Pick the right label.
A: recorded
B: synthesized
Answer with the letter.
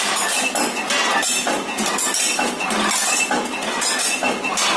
A